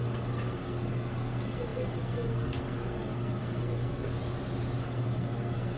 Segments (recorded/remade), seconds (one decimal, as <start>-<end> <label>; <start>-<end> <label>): 0.0-4.1 remade; 4.1-4.8 recorded; 4.8-5.8 remade

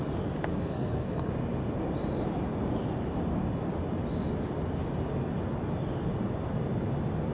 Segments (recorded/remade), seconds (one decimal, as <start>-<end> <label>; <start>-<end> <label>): 0.0-0.5 recorded; 0.5-1.3 remade; 1.3-7.3 recorded

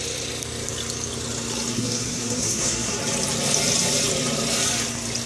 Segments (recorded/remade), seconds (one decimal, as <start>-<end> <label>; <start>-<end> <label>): 0.0-1.7 recorded; 1.7-3.0 remade; 3.0-5.3 recorded

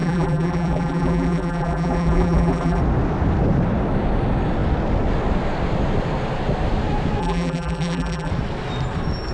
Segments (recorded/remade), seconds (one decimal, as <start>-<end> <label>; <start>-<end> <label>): 0.0-2.8 remade; 2.8-7.2 recorded; 7.2-8.3 remade; 8.3-9.3 recorded